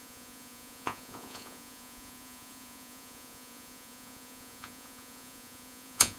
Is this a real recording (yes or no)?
no